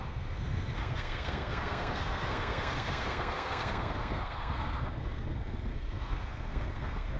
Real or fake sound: fake